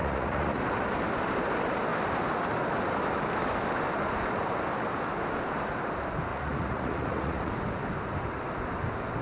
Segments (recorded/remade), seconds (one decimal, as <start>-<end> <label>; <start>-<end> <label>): 0.0-0.6 remade; 0.6-6.3 recorded; 6.3-7.5 remade; 7.5-9.2 recorded